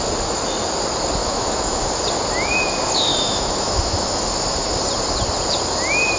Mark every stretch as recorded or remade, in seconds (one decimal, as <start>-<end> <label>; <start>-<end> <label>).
0.0-1.2 recorded; 1.2-1.8 remade; 1.8-3.1 recorded; 3.1-4.3 remade; 4.3-6.2 recorded